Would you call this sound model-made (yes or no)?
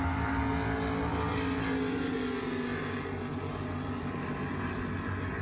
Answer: no